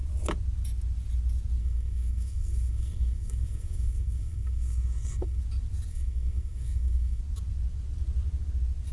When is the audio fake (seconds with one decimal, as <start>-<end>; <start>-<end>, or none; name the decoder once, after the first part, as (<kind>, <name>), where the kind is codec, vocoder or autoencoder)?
1.6-5.4 (codec, SNAC); 5.9-7.2